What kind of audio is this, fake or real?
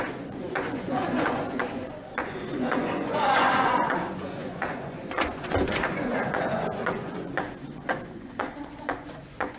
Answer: fake